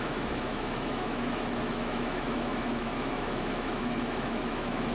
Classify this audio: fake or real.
fake